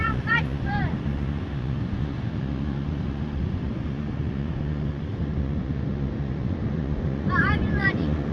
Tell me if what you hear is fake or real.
fake